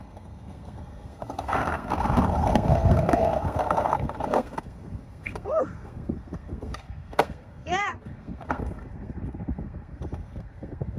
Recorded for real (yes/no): no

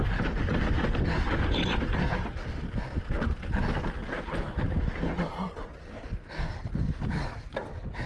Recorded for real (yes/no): yes